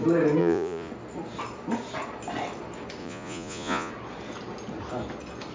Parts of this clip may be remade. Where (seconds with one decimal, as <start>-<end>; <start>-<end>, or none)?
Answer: 0.4-0.9; 3.0-3.9